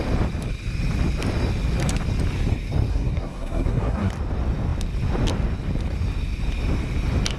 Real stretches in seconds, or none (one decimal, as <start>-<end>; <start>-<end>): 0.0-2.9; 4.1-7.4